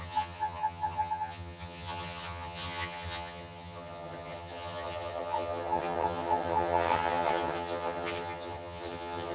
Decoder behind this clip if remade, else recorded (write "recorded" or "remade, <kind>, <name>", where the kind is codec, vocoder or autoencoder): remade, vocoder, HiFi-GAN